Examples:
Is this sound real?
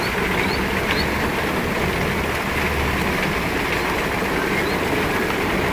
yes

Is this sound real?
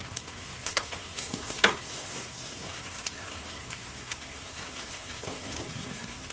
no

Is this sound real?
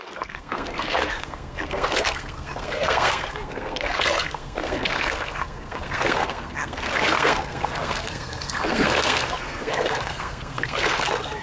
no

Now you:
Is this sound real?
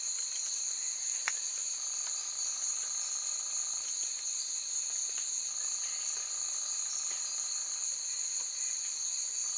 yes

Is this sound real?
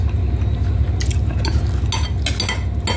yes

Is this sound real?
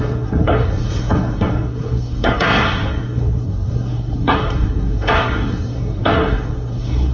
no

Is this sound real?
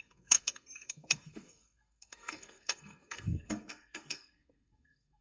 no